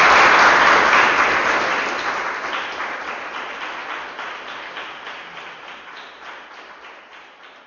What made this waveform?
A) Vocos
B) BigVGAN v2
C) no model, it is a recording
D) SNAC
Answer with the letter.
C